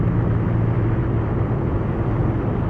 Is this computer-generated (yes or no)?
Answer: no